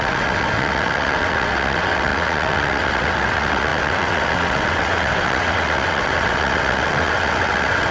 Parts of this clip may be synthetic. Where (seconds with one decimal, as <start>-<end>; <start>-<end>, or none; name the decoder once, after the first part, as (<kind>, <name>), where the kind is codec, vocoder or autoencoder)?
0.0-7.9 (vocoder, WaveNeXt)